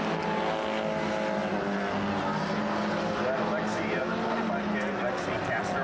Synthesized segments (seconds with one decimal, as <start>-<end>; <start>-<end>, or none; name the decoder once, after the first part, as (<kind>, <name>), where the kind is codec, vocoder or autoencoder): none